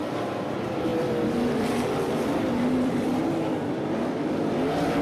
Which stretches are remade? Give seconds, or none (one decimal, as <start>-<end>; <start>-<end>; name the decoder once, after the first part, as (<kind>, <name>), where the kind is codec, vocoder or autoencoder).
0.9-3.2 (vocoder, BigVGAN v2)